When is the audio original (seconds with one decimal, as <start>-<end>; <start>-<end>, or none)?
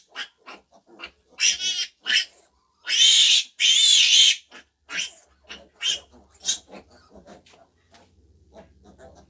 0.0-9.3